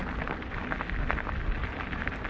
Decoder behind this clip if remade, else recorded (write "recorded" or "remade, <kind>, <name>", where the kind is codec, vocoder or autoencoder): recorded